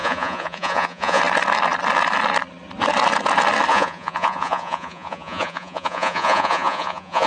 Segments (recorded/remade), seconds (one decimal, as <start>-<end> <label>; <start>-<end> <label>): 0.0-1.2 remade; 1.2-3.7 recorded; 3.7-7.3 remade